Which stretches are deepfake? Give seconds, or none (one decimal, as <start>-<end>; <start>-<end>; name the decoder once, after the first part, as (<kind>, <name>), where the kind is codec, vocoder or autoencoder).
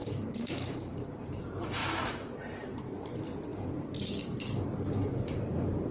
0.0-5.9 (vocoder, BigVGAN v2)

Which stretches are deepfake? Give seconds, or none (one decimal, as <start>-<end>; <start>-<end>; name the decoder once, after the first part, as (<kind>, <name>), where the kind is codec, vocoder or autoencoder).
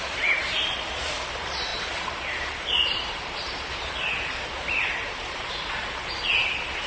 0.0-6.9 (vocoder, BigVGAN v2)